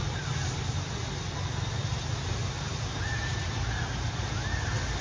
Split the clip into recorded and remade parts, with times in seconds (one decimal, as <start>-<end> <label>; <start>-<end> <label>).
0.0-5.0 recorded